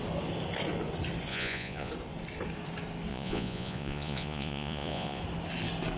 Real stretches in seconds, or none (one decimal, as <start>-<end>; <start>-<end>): 0.0-1.3; 1.9-3.1; 5.2-6.0